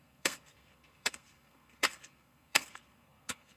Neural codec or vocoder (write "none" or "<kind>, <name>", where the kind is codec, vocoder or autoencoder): codec, SNAC